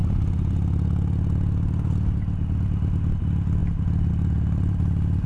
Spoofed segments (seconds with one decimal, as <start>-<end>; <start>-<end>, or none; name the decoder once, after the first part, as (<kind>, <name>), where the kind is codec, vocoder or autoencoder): 3.2-5.3 (vocoder, BigVGAN v2)